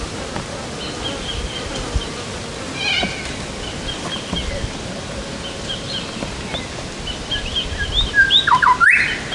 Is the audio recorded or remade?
recorded